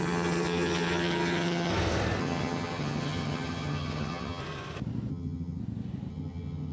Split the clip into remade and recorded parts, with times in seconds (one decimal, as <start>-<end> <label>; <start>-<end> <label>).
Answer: 0.0-1.7 remade; 1.7-2.2 recorded; 2.2-4.4 remade; 4.4-5.1 recorded; 5.1-5.6 remade; 5.6-6.1 recorded; 6.1-6.7 remade